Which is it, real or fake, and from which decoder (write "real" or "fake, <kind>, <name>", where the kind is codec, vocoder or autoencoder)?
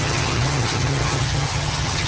fake, vocoder, HiFi-GAN